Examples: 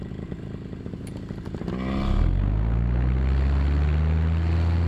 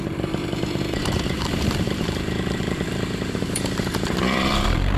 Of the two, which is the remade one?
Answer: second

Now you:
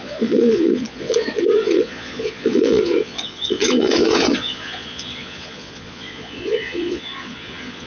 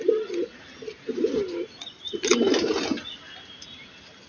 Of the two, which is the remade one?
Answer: first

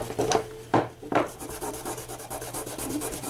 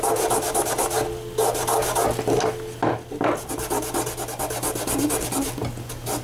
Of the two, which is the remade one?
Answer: first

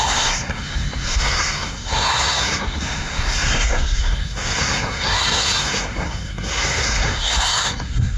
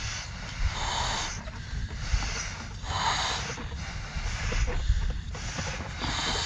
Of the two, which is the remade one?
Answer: first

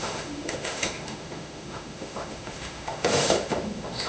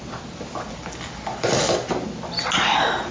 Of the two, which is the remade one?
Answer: first